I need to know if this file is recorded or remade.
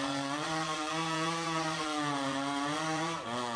remade